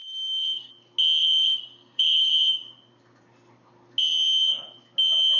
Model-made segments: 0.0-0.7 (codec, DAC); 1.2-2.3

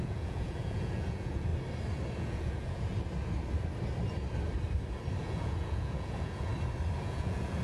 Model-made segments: 0.0-1.5 (vocoder, Vocos); 2.2-2.9; 5.2-6.5; 7.0-7.6

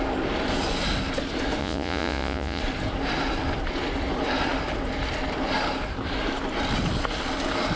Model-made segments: 1.6-2.6 (vocoder, Vocos)

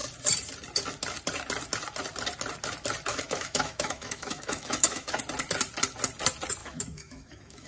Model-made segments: 3.1-5.2 (autoencoder, DAC-VAE); 6.6-7.7

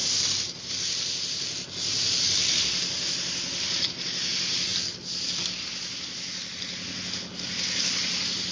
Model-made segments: none

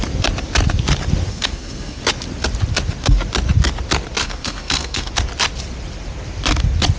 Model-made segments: 1.3-2.0 (codec, SNAC); 4.2-5.1

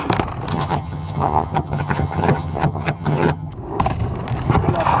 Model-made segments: 0.5-3.5 (vocoder, HiFi-GAN)